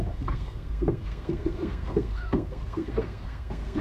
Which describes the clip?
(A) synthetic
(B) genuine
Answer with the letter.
A